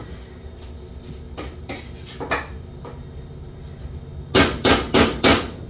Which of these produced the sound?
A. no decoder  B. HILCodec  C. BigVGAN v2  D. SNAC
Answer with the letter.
A